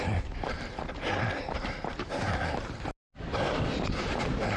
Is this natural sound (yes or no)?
yes